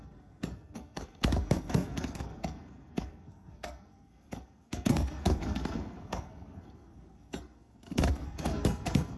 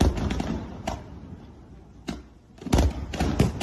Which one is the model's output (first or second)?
first